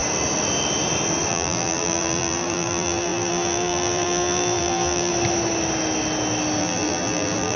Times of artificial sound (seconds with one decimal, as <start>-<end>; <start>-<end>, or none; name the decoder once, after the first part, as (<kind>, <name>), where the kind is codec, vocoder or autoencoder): 1.3-5.1 (vocoder, BigVGAN v2); 6.6-7.6